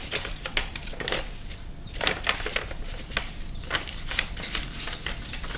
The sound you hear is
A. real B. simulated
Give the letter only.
B